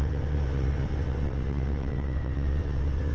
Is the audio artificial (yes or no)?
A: yes